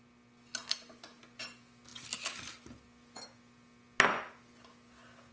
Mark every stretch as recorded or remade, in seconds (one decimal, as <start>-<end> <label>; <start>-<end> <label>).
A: 0.0-5.3 recorded